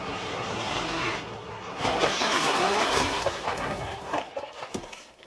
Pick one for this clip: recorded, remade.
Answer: remade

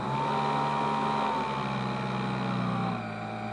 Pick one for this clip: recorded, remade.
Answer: recorded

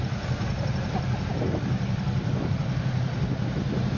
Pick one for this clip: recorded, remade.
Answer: recorded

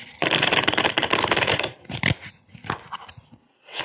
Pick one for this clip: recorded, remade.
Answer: recorded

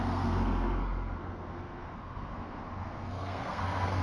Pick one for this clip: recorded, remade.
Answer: remade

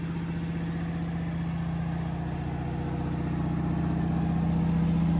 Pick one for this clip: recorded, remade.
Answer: recorded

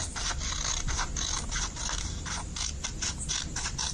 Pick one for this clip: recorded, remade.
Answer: recorded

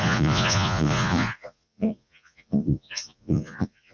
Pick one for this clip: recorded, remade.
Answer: remade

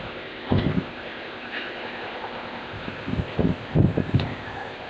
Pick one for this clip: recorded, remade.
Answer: remade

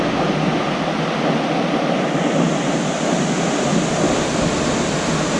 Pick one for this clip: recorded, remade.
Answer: recorded